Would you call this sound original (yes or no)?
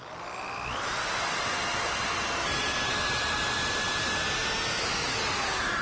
yes